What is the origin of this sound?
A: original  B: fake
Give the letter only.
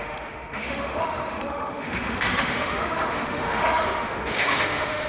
B